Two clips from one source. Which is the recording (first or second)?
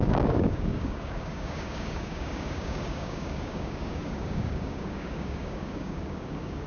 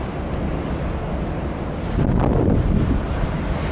second